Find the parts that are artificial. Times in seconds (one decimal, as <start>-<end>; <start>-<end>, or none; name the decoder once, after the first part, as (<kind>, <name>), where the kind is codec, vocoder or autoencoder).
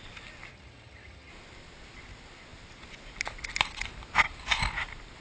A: 0.5-1.3 (vocoder, HiFi-GAN)